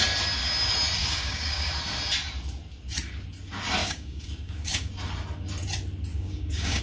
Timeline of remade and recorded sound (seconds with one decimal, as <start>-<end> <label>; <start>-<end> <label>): 0.0-1.0 recorded; 1.0-1.7 remade; 1.7-3.8 recorded; 3.8-4.9 remade; 4.9-6.1 recorded; 6.1-6.8 remade